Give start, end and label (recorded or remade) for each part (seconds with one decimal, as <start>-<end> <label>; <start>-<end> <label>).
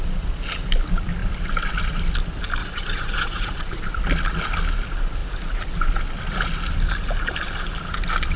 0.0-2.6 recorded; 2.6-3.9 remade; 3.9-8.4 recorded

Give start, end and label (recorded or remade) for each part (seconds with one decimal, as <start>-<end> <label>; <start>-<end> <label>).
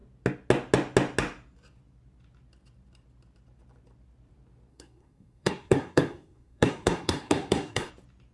0.0-4.7 recorded; 4.7-7.9 remade; 7.9-8.3 recorded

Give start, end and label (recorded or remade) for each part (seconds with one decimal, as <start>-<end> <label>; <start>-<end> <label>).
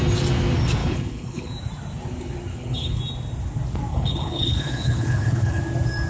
0.0-0.8 recorded; 0.8-1.5 remade; 1.5-2.5 recorded; 2.5-3.0 remade; 3.0-3.9 recorded; 3.9-5.6 remade; 5.6-6.1 recorded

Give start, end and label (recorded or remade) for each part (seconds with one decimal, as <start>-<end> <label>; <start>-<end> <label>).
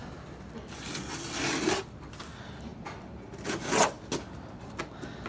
0.0-5.3 recorded